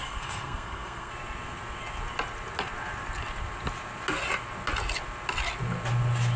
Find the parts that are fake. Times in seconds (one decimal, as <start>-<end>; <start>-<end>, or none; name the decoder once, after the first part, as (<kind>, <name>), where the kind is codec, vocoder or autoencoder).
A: 0.0-1.1 (codec, SNAC)